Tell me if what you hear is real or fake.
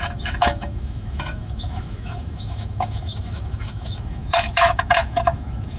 fake